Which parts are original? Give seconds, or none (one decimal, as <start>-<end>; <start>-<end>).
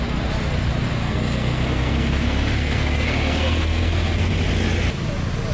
0.0-1.0; 4.3-5.5